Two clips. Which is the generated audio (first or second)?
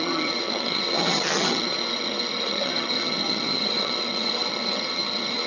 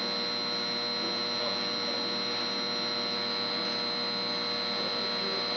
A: first